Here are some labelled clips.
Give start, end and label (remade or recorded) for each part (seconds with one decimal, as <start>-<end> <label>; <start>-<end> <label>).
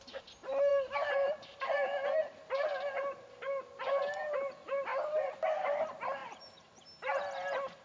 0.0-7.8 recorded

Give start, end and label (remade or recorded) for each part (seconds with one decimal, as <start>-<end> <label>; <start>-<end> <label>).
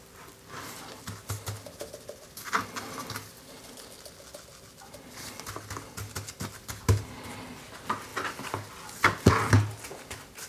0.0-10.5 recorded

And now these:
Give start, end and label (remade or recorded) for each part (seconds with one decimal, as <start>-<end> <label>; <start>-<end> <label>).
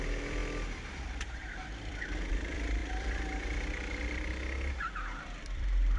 0.0-0.4 remade; 0.4-1.0 recorded; 1.0-2.8 remade; 2.8-4.8 recorded; 4.8-6.0 remade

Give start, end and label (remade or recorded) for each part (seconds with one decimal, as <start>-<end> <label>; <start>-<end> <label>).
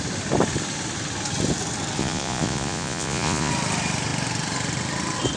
0.0-2.0 recorded; 2.0-3.5 remade; 3.5-5.4 recorded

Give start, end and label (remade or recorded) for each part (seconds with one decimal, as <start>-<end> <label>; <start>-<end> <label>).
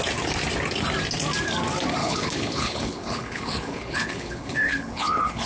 0.0-2.0 recorded; 2.0-5.5 remade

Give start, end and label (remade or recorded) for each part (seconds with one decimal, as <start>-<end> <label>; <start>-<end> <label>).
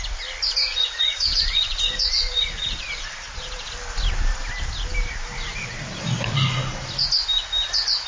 0.0-0.7 recorded; 0.7-3.7 remade; 3.7-8.1 recorded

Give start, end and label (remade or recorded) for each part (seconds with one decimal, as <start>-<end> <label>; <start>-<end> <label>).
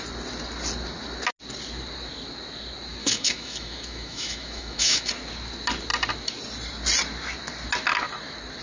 0.0-3.0 recorded; 3.0-5.1 remade; 5.1-8.6 recorded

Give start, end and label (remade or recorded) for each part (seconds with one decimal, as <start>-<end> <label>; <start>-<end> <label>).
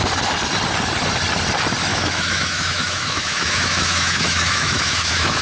0.0-1.9 recorded; 1.9-5.4 remade